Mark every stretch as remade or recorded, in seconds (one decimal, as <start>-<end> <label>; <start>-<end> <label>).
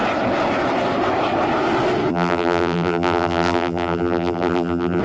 0.0-2.1 recorded; 2.1-5.0 remade